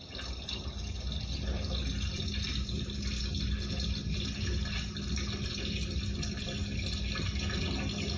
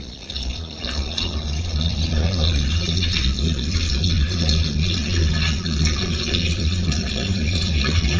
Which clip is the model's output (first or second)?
second